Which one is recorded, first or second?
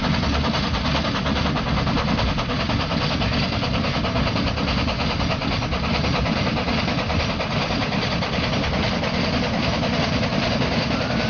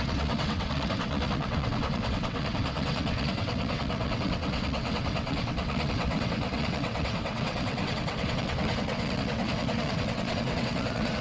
first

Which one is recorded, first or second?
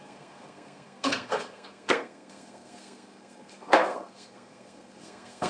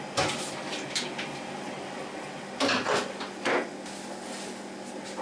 second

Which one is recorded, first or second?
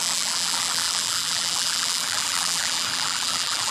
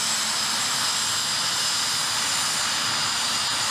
second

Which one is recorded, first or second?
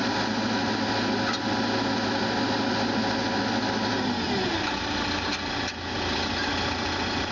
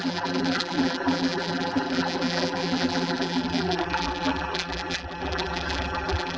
first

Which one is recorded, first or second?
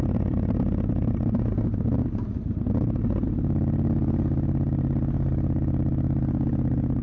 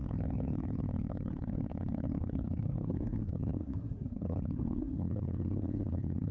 first